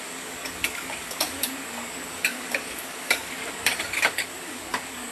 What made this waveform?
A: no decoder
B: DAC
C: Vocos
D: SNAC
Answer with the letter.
B